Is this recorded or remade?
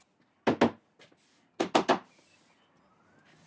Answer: recorded